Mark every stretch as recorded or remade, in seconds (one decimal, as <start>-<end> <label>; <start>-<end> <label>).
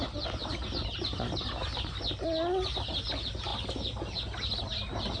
0.0-5.2 recorded